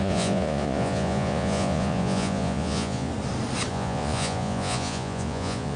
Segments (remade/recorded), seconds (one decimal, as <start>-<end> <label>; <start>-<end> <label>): 0.0-3.1 remade; 3.1-3.7 recorded; 3.7-5.8 remade